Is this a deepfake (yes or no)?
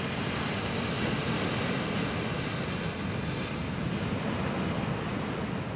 no